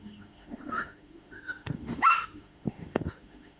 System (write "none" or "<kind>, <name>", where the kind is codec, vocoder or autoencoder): autoencoder, DAC-VAE